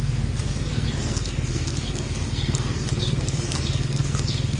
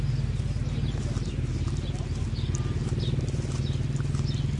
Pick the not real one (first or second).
first